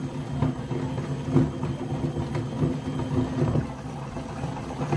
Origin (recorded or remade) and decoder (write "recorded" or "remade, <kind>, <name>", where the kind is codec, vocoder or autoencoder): recorded